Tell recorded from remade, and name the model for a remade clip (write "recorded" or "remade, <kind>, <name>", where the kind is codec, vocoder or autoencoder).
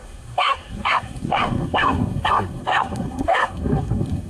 remade, codec, SNAC